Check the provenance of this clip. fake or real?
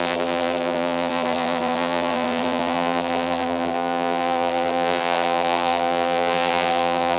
fake